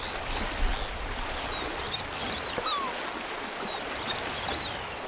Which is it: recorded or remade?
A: recorded